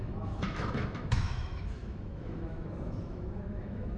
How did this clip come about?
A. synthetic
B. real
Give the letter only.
A